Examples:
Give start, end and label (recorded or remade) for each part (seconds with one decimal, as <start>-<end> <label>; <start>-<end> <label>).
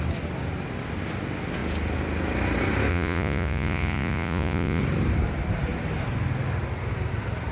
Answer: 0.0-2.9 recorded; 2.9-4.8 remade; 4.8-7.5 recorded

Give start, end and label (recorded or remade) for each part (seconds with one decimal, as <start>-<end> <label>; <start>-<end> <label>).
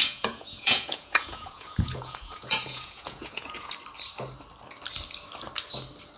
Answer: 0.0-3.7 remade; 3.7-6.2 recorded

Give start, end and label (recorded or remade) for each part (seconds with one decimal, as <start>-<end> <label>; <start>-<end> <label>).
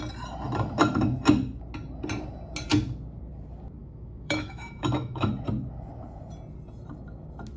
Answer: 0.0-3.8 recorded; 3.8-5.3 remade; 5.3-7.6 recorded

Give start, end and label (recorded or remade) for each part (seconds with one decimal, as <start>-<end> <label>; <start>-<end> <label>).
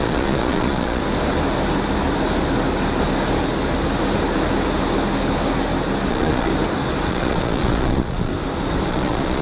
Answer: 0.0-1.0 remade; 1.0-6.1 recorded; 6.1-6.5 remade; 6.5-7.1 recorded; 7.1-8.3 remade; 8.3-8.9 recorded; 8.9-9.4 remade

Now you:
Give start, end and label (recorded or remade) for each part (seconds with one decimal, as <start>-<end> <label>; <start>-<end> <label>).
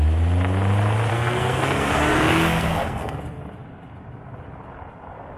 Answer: 0.0-1.1 recorded; 1.1-3.2 remade; 3.2-5.4 recorded